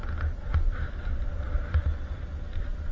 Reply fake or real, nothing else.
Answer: real